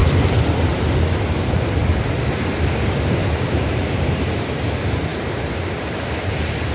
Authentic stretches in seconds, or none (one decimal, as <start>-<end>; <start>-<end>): 0.0-3.2; 4.6-6.7